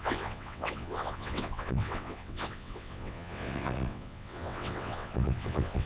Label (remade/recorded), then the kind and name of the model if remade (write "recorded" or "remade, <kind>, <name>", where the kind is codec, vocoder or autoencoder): remade, vocoder, WaveNeXt